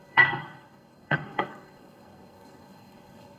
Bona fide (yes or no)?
no